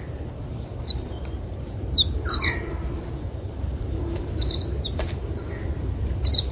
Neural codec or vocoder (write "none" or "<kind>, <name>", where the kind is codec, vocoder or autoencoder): vocoder, BigVGAN v2